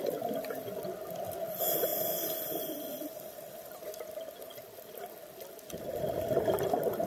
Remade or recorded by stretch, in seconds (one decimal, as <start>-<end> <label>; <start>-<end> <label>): 0.0-1.9 recorded; 1.9-4.0 remade; 4.0-4.5 recorded; 4.5-5.2 remade; 5.2-7.1 recorded